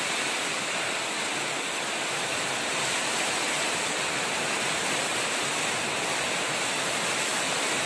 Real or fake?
real